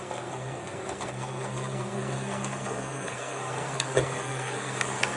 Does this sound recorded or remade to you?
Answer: remade